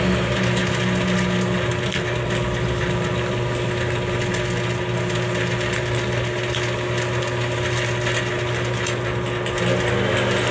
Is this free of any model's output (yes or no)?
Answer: yes